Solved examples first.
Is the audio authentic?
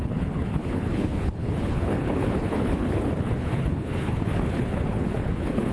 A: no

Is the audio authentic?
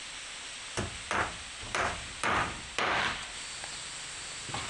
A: yes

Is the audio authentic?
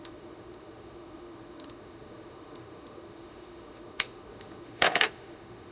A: no